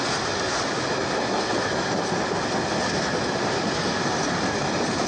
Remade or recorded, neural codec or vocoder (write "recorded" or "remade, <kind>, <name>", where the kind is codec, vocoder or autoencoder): recorded